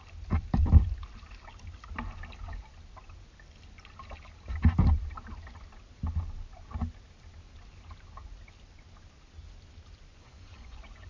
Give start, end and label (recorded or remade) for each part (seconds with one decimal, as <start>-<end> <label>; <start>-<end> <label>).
0.0-10.1 recorded; 10.1-11.1 remade